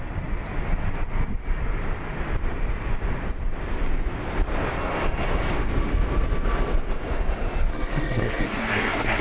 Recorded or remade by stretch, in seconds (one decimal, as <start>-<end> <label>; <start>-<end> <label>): 0.0-7.7 recorded; 7.7-9.2 remade